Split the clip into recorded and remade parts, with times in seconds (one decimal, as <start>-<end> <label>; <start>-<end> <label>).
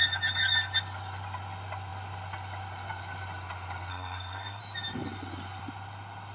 0.0-3.9 recorded; 3.9-4.6 remade; 4.6-6.3 recorded